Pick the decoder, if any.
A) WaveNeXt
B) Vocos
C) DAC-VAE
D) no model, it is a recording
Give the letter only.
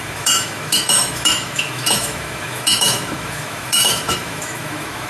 C